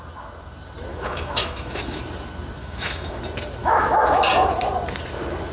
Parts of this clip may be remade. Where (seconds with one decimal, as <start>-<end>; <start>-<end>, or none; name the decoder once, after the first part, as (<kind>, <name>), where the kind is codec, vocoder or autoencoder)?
0.9-2.0 (autoencoder, DAC-VAE); 2.6-3.2; 3.6-4.2